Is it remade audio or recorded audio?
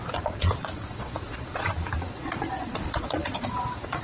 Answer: remade